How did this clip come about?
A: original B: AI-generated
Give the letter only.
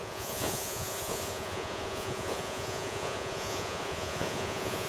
B